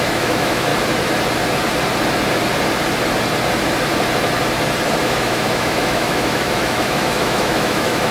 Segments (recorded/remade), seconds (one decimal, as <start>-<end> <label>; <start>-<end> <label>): 0.0-0.7 remade; 0.7-5.0 recorded; 5.0-8.1 remade